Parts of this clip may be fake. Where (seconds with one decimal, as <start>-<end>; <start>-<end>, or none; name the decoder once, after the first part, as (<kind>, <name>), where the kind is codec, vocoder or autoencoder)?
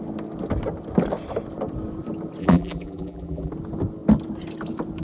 2.4-3.5 (vocoder, BigVGAN v2)